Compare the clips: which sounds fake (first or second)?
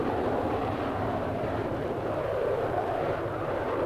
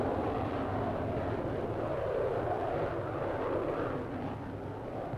first